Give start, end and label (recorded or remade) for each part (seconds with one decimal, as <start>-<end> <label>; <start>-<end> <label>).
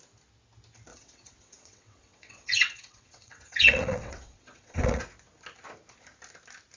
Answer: 0.0-0.9 recorded; 0.9-5.0 remade; 5.0-6.8 recorded